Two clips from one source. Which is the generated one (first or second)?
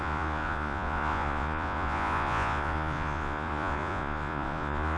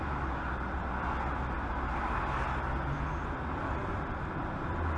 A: first